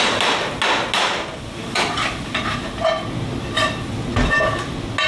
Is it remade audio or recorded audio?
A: recorded